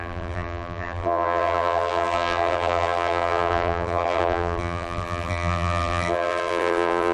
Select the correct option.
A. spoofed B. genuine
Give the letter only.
A